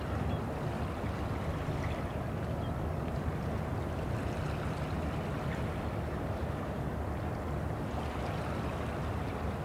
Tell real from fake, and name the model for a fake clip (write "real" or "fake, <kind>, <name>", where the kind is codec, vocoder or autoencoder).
real